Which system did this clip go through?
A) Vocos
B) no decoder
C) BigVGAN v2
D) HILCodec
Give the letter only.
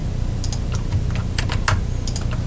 B